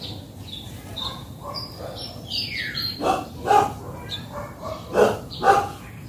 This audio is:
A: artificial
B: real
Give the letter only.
A